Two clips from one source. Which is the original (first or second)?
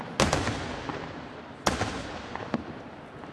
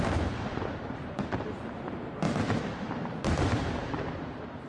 first